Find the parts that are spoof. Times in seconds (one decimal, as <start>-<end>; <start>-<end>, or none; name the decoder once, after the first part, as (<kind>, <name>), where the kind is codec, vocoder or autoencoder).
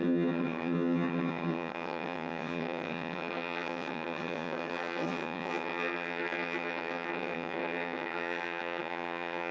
0.0-9.5 (vocoder, HiFi-GAN)